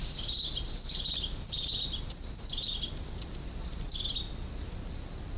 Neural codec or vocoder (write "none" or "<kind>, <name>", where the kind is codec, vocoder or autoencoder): none